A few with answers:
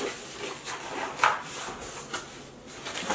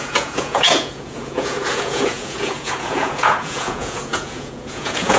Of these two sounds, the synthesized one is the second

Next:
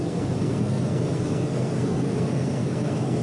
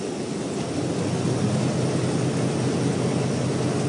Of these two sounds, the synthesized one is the first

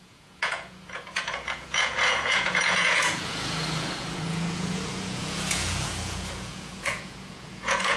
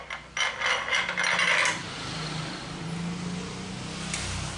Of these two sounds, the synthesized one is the first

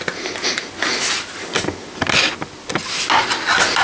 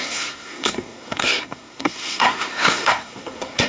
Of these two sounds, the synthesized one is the second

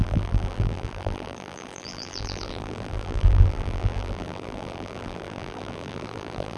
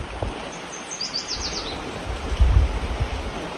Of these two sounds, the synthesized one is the first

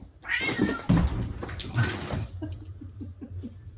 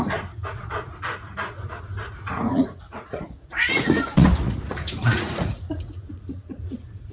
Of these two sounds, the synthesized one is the second